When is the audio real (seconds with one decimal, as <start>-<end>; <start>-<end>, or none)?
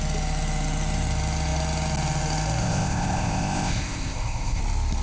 0.0-2.6; 4.6-5.0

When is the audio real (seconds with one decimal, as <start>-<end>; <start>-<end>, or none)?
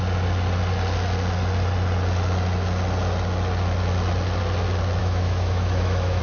0.0-5.0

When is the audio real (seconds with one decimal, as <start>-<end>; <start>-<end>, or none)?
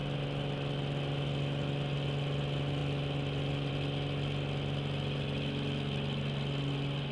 0.0-7.1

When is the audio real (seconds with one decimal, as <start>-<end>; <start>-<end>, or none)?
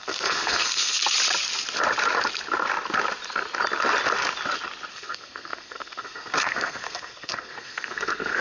1.0-4.9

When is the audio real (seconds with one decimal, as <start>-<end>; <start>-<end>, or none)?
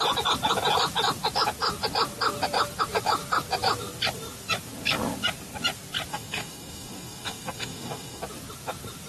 0.0-6.1; 8.2-9.1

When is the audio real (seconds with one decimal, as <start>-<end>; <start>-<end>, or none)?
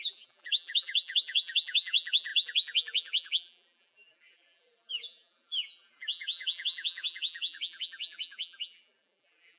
none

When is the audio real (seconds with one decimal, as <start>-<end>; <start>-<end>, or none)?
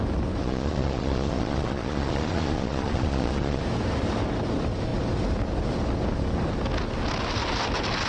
0.0-0.4; 3.6-8.1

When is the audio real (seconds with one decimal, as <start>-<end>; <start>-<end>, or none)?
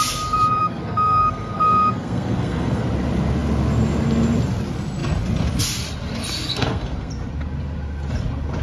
0.0-0.6; 2.8-6.5; 7.1-8.6